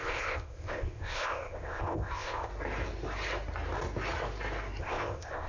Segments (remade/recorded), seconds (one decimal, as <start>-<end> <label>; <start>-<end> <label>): 0.0-2.5 remade; 2.5-4.8 recorded; 4.8-5.5 remade